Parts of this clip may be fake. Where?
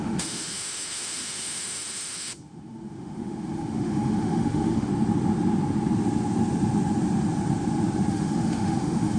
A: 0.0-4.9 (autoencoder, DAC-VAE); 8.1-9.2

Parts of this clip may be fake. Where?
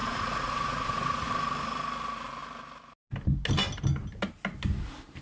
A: 0.0-1.3 (vocoder, Vocos)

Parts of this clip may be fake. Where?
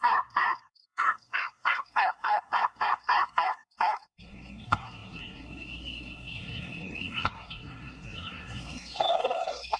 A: 0.0-9.8 (codec, SNAC)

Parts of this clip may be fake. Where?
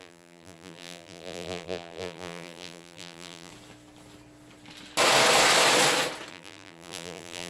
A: 0.0-3.5 (vocoder, BigVGAN v2); 6.3-7.5